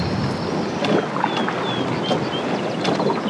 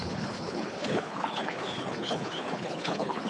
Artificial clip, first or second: second